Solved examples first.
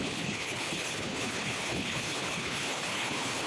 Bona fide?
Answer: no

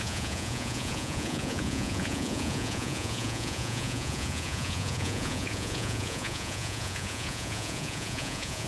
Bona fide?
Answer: no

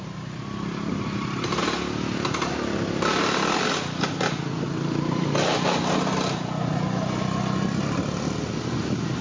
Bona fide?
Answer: yes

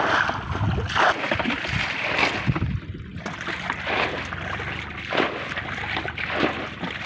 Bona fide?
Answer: yes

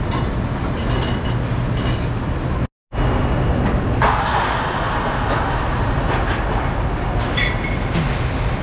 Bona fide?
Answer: yes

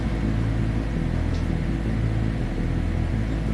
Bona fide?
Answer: yes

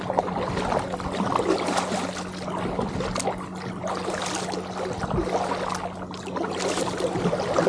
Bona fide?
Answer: yes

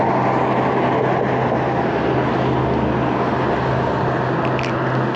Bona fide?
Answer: yes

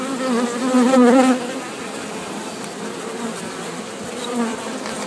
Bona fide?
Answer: yes